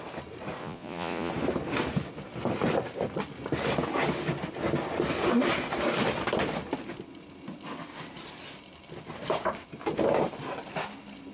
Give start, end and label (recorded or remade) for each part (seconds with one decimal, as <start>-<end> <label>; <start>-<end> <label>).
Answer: 0.0-0.6 recorded; 0.6-1.3 remade; 1.3-11.3 recorded